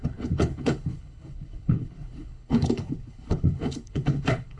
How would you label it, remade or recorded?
remade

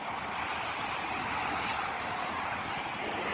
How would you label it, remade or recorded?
recorded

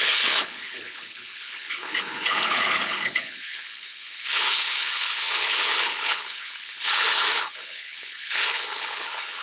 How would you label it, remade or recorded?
remade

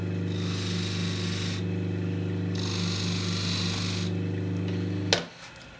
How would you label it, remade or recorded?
recorded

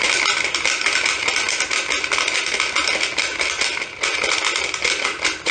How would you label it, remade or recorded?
recorded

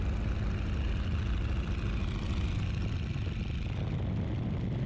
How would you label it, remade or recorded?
recorded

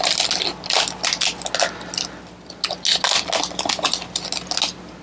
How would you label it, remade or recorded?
recorded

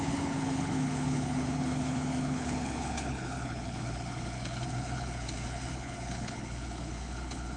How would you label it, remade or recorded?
remade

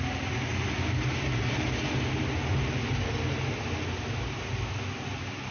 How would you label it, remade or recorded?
recorded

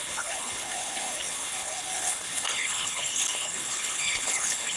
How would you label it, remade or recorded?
remade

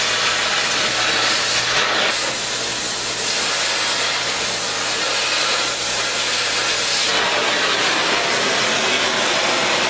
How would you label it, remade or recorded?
recorded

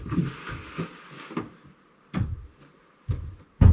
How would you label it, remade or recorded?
recorded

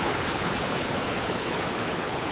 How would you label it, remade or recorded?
remade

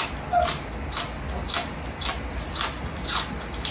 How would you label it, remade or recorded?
recorded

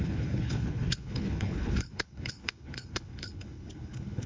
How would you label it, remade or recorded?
remade